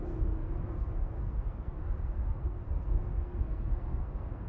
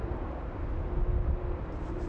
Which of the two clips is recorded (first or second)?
second